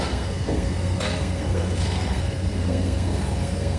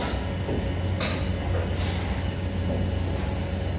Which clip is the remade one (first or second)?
first